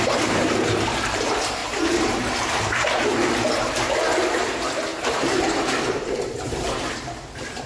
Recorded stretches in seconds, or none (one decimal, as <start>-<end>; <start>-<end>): 0.0-1.6; 3.3-4.9; 6.9-7.7